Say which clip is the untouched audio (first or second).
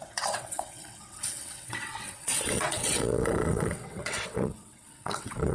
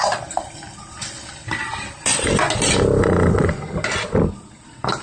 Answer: second